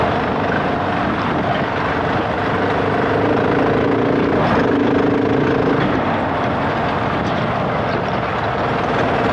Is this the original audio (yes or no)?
yes